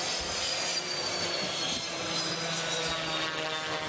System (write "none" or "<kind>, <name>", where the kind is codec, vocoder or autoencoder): none